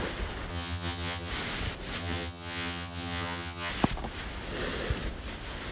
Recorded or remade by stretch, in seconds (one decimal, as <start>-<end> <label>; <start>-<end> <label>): 0.0-0.5 recorded; 0.5-1.3 remade; 1.3-2.0 recorded; 2.0-3.7 remade; 3.7-5.7 recorded